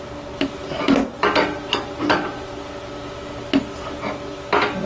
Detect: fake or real real